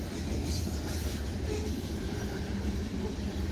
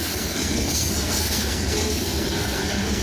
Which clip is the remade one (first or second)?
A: second